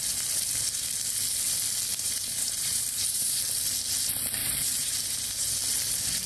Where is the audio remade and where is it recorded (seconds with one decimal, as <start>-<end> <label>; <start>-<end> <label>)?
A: 0.0-1.9 recorded; 1.9-3.4 remade; 3.4-4.4 recorded; 4.4-5.5 remade; 5.5-6.3 recorded